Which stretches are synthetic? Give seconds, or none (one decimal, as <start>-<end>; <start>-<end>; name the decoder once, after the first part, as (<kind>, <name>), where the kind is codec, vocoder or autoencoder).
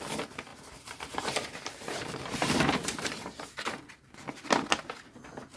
0.5-3.9 (vocoder, BigVGAN v2)